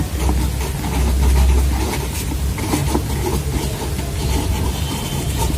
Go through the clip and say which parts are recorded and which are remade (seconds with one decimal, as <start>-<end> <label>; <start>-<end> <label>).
0.0-5.6 recorded